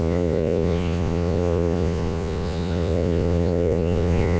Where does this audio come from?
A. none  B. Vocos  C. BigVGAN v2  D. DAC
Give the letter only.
B